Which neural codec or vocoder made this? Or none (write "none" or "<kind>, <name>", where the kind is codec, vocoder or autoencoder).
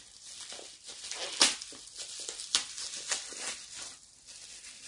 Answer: none